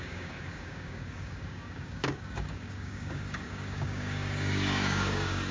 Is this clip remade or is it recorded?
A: remade